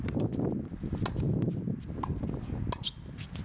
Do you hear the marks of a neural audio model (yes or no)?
no